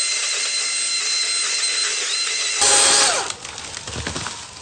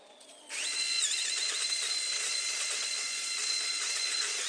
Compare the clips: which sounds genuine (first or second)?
first